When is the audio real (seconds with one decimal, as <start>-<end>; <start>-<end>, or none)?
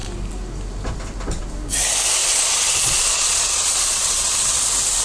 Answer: 0.0-2.2; 4.6-5.0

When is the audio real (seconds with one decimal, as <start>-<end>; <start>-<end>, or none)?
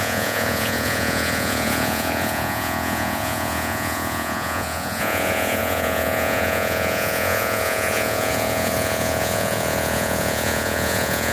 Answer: none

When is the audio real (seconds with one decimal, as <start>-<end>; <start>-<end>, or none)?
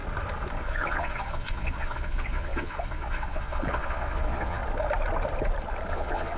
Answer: 0.0-0.6; 4.6-5.9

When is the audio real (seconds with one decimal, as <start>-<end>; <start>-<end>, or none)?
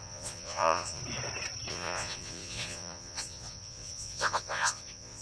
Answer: 1.0-1.7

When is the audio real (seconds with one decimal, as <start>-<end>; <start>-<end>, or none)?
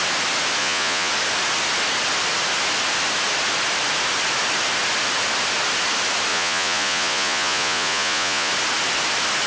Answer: 0.0-0.6; 1.1-6.3; 8.5-9.5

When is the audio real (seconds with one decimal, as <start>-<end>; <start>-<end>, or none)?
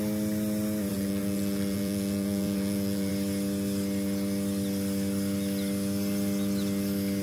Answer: 0.0-0.9; 3.1-7.2